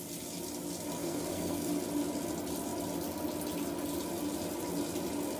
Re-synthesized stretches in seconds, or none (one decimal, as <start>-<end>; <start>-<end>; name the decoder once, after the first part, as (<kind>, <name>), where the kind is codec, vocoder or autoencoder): 1.0-1.7 (codec, SNAC)